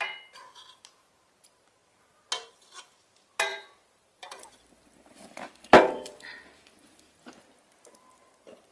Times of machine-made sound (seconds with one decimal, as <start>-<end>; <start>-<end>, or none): 3.5-7.3